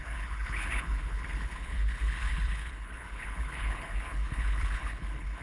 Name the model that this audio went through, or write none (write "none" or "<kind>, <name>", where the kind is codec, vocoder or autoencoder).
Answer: codec, HILCodec